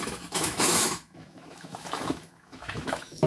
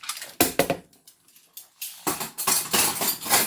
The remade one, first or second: first